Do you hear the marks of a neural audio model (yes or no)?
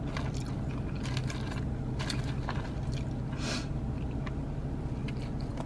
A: no